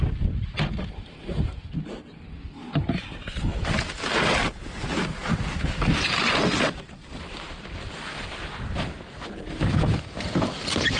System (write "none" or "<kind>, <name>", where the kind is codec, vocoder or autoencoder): none